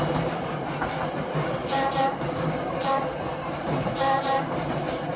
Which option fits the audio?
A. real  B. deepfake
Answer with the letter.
B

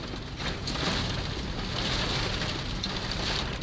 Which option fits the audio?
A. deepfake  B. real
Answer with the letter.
A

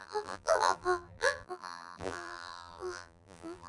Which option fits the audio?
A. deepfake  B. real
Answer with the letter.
A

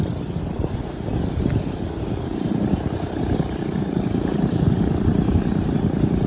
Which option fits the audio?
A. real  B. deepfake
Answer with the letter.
B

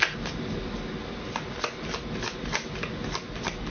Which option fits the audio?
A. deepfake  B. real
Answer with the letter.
B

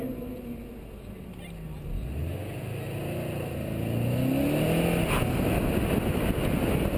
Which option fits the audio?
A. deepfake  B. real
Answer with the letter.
B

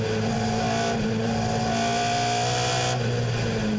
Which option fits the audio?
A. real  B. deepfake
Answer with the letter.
A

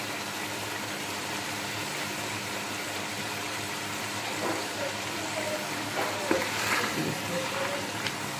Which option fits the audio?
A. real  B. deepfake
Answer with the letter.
B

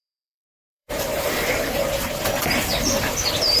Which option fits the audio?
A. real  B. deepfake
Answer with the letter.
B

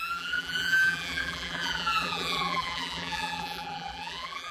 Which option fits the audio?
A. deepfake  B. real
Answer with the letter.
A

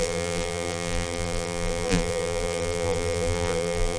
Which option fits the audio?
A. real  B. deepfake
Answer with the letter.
B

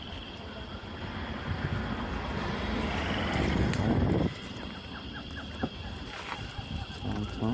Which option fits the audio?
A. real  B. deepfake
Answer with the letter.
A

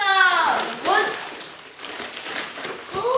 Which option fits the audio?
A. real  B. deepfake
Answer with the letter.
B